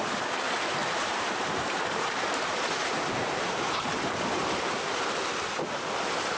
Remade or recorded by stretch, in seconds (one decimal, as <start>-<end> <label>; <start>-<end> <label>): 0.0-0.8 recorded; 0.8-3.7 remade; 3.7-6.4 recorded